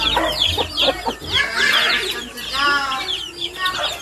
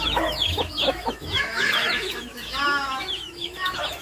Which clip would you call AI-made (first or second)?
second